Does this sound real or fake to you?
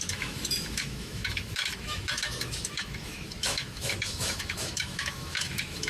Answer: fake